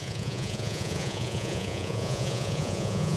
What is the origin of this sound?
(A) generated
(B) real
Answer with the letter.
A